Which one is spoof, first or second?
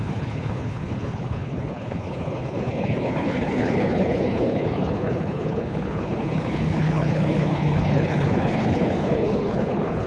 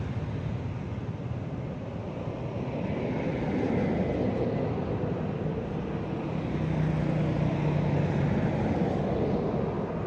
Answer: first